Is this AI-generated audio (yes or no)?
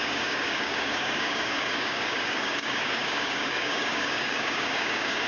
yes